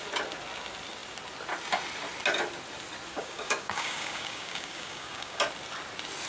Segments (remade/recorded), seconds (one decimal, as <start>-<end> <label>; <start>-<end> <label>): 0.0-3.1 recorded; 3.1-5.4 remade; 5.4-6.3 recorded